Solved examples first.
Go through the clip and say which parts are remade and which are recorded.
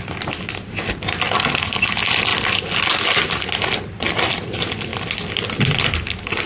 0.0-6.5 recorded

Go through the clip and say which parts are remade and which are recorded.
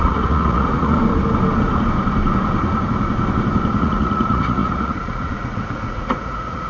0.0-1.0 remade; 1.0-3.8 recorded; 3.8-6.7 remade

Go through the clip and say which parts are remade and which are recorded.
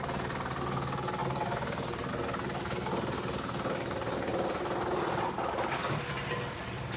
0.0-1.2 recorded; 1.2-2.1 remade; 2.1-7.0 recorded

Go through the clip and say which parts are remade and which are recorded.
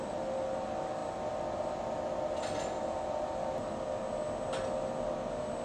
0.0-5.6 recorded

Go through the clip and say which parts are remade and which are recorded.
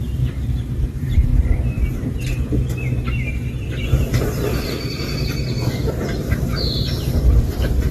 0.0-1.3 remade; 1.3-3.8 recorded; 3.8-7.9 remade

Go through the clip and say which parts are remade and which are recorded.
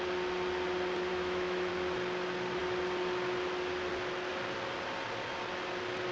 0.0-1.1 recorded; 1.1-1.7 remade; 1.7-6.1 recorded